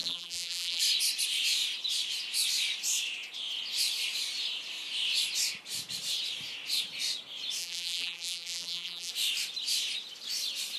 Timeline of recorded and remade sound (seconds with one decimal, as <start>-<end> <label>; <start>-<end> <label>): 0.0-0.8 remade; 0.8-7.6 recorded; 7.6-9.1 remade; 9.1-10.8 recorded